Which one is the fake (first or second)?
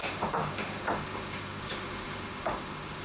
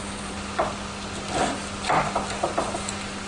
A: first